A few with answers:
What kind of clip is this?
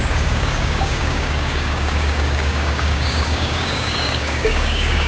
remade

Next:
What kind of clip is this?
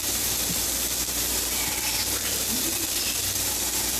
recorded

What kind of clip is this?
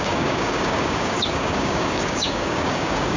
remade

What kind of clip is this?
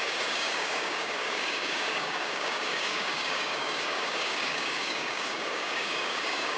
remade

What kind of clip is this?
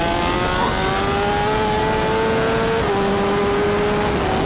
recorded